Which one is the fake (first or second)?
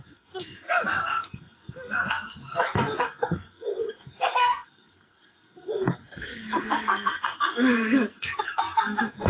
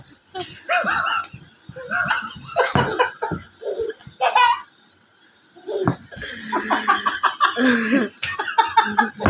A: first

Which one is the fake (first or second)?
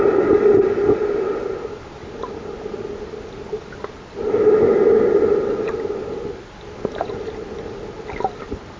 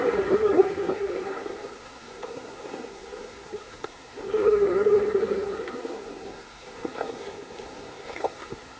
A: second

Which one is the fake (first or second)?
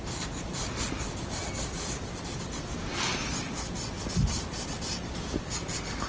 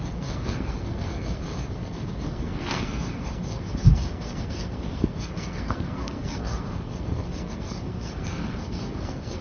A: second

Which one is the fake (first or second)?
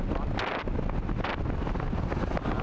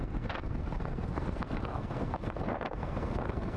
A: second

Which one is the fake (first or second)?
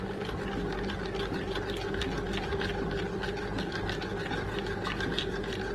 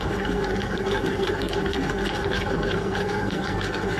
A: second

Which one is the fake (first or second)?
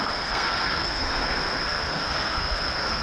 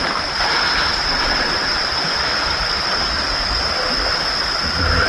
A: first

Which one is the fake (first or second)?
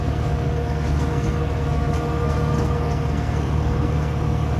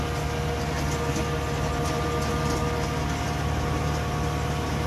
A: first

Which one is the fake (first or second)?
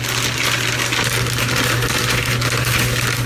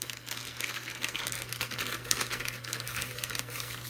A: second